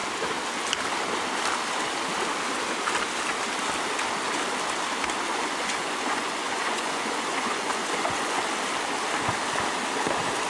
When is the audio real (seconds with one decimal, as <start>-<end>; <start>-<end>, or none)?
0.0-5.3; 8.4-10.5